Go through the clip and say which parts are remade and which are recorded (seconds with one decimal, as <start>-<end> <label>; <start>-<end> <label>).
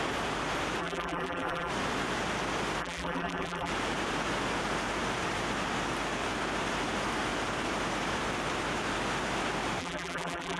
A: 0.0-0.8 recorded; 0.8-1.7 remade; 1.7-2.8 recorded; 2.8-3.7 remade; 3.7-9.8 recorded; 9.8-10.6 remade